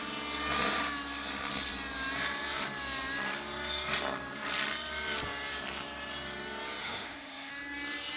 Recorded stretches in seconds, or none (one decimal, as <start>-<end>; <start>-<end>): 0.0-6.8; 7.5-8.2